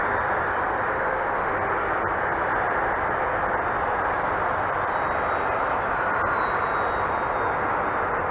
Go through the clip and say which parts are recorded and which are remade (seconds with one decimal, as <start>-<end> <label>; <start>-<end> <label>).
0.0-0.9 recorded; 0.9-1.5 remade; 1.5-8.3 recorded